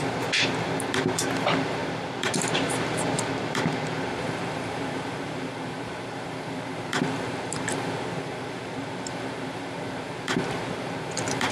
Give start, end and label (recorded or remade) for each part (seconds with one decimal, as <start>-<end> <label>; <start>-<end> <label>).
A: 0.0-11.5 remade